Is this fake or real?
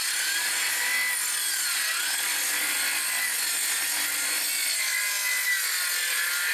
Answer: real